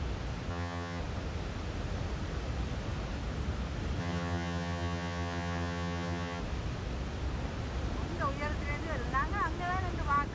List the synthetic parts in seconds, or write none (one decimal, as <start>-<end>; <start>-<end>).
0.5-1.0; 4.0-6.4